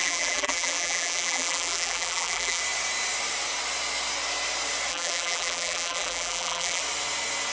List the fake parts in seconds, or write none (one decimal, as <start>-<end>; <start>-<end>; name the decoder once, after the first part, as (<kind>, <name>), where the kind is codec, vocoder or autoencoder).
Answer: 0.0-2.6 (vocoder, BigVGAN v2); 4.9-6.8